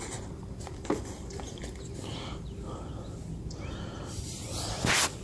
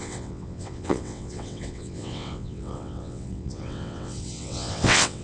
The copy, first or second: second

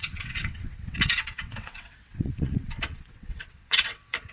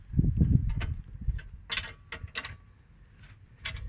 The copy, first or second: first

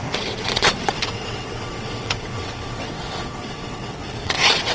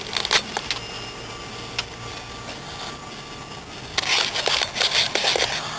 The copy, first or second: first